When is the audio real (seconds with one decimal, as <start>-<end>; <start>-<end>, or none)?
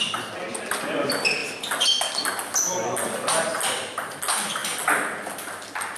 0.0-6.0